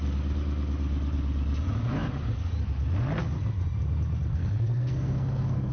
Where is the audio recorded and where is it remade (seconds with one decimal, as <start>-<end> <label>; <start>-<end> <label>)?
0.0-4.3 recorded; 4.3-5.7 remade